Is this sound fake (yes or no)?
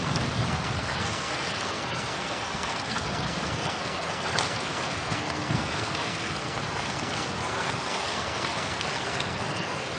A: yes